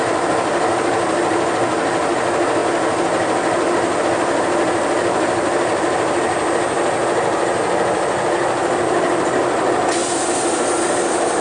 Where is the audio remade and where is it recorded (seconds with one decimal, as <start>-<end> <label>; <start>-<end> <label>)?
0.0-11.4 recorded